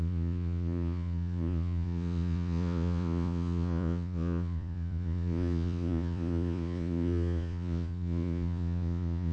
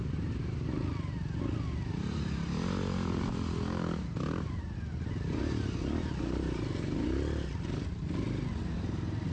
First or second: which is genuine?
second